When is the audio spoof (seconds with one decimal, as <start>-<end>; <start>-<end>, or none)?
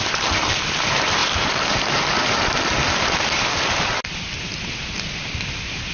none